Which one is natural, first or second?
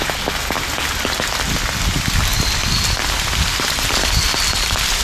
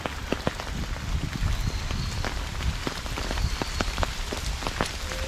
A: first